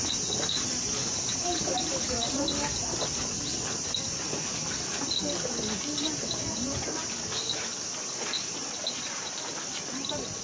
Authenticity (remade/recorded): recorded